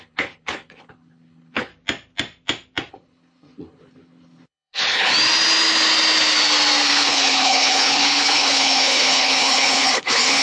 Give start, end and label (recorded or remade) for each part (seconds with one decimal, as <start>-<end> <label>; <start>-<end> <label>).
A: 0.0-1.7 remade; 1.7-2.9 recorded; 2.9-5.1 remade; 5.1-6.9 recorded; 6.9-10.4 remade